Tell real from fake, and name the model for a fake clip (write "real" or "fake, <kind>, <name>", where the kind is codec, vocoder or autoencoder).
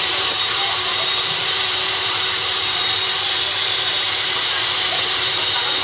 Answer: fake, vocoder, BigVGAN v2